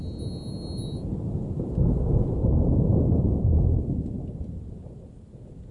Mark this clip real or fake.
real